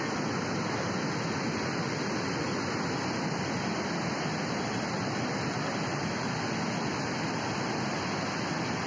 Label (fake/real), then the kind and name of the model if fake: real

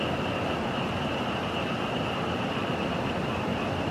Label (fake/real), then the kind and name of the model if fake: fake, vocoder, BigVGAN v2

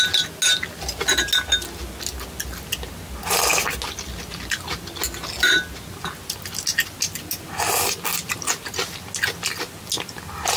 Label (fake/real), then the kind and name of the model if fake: real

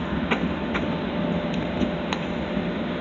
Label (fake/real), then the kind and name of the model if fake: real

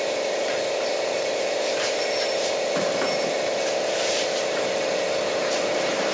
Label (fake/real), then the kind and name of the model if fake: fake, vocoder, BigVGAN v2